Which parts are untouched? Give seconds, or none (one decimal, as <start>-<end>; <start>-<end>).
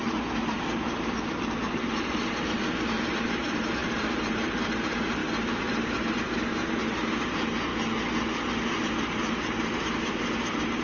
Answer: 7.7-8.7